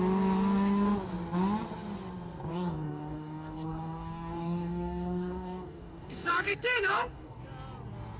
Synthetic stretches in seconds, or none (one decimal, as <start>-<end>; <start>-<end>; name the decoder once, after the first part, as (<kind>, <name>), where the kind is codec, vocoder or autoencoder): 2.5-7.4 (codec, DAC)

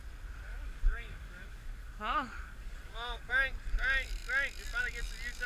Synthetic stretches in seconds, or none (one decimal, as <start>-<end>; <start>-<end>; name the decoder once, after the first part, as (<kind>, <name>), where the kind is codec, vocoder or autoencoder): 0.5-3.3 (codec, DAC)

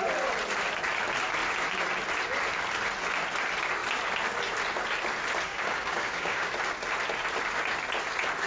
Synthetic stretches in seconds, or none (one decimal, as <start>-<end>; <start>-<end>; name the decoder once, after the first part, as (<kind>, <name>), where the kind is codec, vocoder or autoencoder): 5.5-6.5 (codec, DAC)

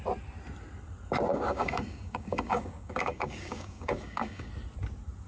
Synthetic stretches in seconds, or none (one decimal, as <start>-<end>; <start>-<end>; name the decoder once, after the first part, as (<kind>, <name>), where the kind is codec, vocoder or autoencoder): 1.3-4.5 (codec, DAC)